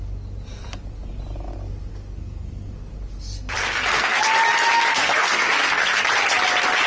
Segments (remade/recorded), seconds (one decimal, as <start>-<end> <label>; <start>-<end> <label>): 0.0-1.9 recorded; 1.9-2.9 remade; 2.9-3.6 recorded; 3.6-4.2 remade; 4.2-4.9 recorded; 4.9-6.0 remade; 6.0-6.9 recorded